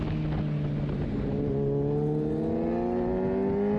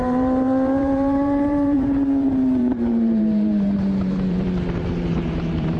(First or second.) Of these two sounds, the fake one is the second